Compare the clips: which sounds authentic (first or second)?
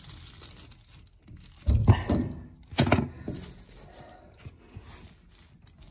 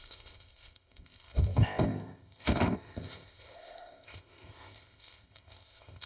first